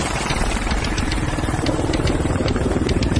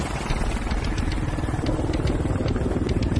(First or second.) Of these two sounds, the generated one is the first